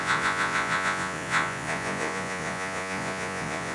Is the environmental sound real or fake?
fake